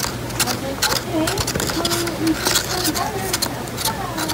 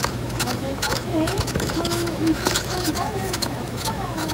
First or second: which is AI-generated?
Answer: second